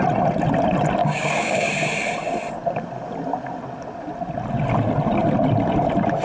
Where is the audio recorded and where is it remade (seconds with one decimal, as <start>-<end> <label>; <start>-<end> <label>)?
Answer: 0.0-1.0 recorded; 1.0-1.7 remade; 1.7-6.2 recorded